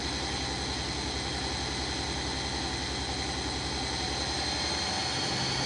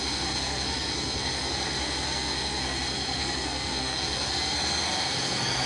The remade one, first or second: second